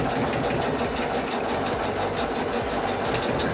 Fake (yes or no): no